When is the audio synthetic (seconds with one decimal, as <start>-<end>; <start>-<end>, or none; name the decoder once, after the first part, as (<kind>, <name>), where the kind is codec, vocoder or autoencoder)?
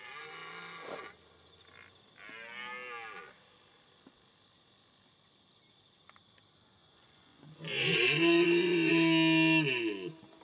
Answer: 6.8-8.9 (vocoder, Vocos)